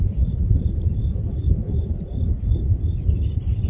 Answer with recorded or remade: remade